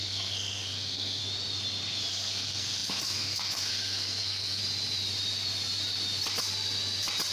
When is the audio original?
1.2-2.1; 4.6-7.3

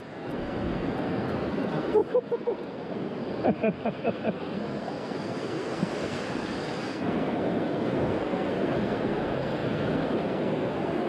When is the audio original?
none

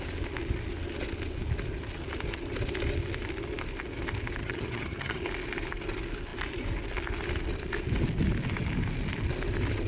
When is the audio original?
0.0-4.4; 5.2-9.9

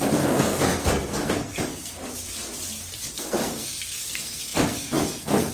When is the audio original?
2.0-3.2

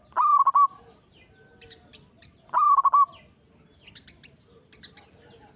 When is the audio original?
0.0-5.6

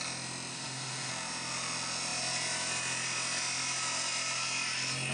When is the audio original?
0.0-0.5; 1.1-5.1

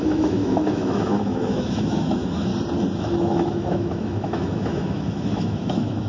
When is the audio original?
2.5-3.0

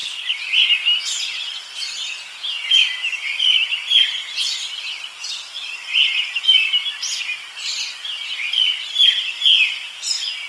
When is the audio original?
0.0-10.5